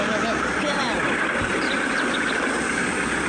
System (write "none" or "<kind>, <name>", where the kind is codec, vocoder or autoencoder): none